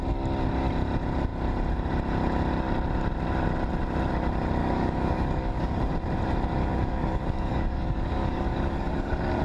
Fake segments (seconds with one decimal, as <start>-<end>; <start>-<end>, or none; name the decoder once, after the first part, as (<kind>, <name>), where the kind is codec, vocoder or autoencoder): 4.6-5.8 (codec, DAC); 6.6-9.4